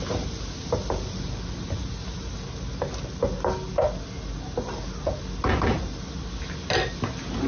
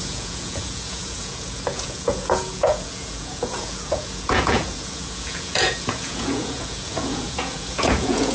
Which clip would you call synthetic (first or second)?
second